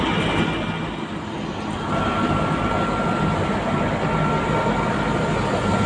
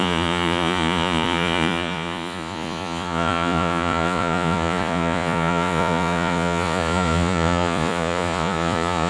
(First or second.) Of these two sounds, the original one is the first